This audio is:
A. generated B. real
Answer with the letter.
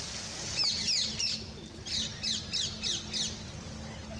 B